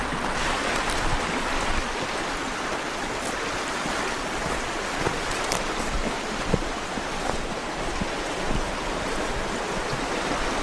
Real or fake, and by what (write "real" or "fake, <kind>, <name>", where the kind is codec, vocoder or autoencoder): real